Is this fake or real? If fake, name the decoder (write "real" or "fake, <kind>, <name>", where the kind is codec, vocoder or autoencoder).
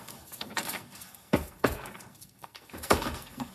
fake, codec, SNAC